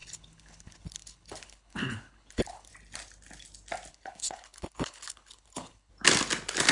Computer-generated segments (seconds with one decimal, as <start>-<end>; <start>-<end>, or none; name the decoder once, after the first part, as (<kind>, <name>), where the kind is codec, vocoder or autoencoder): 0.0-2.7 (codec, HILCodec); 3.9-5.9